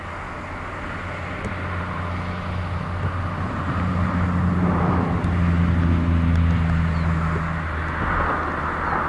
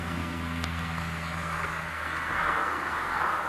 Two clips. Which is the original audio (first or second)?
first